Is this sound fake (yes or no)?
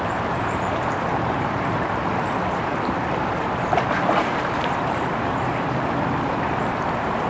yes